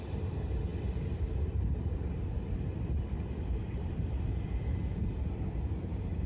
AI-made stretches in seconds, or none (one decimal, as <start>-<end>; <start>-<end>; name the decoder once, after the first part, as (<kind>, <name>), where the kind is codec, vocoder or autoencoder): 0.0-4.8 (vocoder, BigVGAN v2); 5.4-6.3

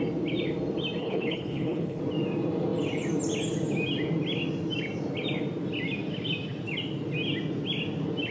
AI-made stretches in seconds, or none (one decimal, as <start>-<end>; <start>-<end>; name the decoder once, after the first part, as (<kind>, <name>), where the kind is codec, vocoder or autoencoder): 1.0-2.0 (codec, HILCodec)

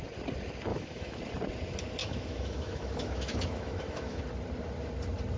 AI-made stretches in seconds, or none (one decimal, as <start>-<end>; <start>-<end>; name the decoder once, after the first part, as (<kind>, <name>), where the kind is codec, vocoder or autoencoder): 0.7-1.2 (autoencoder, DAC-VAE); 2.0-4.2

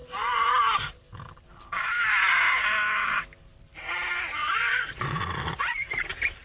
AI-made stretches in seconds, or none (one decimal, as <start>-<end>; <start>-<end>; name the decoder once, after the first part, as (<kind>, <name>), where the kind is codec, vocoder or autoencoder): 4.4-5.5 (vocoder, Vocos)

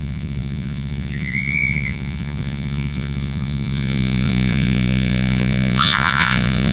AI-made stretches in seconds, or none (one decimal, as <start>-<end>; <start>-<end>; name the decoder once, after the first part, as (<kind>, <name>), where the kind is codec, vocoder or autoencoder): 0.0-6.7 (vocoder, Vocos)